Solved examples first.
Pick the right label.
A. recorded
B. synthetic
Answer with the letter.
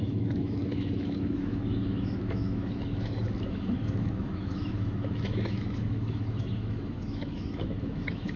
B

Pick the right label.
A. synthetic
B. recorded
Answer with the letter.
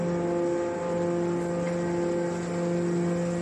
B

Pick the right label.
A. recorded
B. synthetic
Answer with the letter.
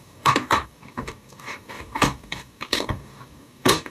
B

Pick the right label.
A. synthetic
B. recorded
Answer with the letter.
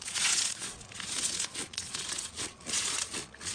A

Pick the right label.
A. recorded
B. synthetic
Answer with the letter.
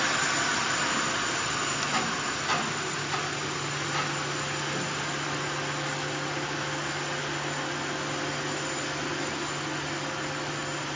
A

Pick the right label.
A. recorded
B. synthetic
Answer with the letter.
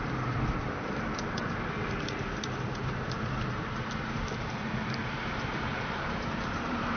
B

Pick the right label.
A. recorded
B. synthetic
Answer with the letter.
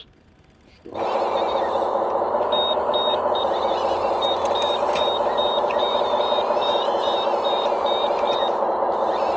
B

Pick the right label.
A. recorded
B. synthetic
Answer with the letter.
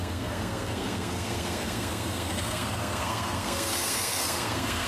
B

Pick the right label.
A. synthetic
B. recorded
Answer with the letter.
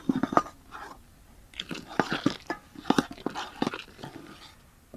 B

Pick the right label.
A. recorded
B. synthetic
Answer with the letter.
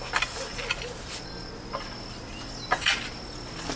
A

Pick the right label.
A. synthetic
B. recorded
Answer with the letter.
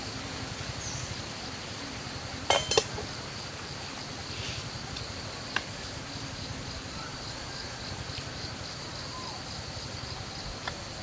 B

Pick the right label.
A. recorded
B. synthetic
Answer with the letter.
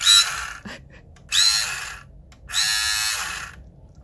A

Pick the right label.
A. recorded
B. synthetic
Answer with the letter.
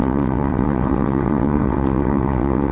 B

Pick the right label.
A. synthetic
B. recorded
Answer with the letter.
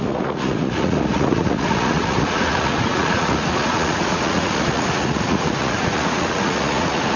A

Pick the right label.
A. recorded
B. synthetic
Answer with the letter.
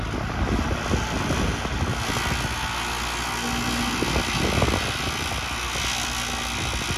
A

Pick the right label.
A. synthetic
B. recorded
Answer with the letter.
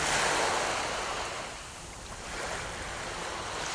B